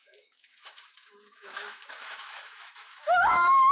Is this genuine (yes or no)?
no